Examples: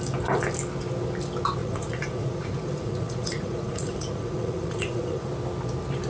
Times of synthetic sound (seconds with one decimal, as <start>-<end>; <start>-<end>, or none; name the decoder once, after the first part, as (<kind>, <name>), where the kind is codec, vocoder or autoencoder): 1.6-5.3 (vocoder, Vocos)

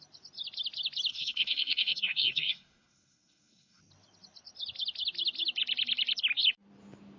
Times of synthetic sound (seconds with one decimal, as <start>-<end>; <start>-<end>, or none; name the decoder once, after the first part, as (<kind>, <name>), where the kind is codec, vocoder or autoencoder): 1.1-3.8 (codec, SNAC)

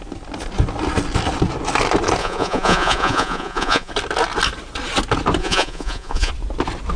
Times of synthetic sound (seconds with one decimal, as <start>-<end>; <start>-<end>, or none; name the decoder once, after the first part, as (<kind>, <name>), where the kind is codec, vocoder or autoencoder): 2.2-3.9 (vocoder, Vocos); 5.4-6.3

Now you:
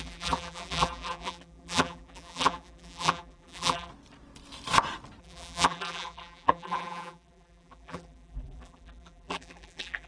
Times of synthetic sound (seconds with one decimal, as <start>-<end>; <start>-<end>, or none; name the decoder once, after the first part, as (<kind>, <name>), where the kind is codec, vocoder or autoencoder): 0.0-3.9 (vocoder, BigVGAN v2); 5.2-10.1